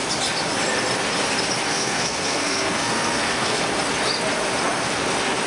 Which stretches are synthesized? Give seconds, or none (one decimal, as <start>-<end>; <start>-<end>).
1.7-3.6